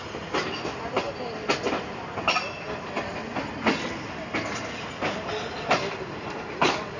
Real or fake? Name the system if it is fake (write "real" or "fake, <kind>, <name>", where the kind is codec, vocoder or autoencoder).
real